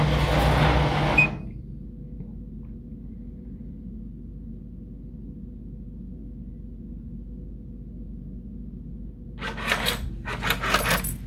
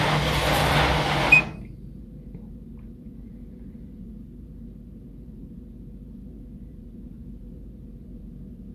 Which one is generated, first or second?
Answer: second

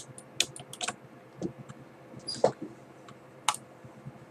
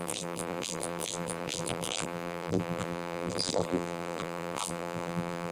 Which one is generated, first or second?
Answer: second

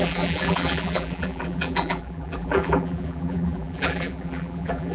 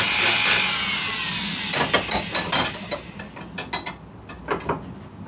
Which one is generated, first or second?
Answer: first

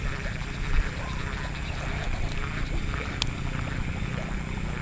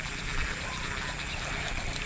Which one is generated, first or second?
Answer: second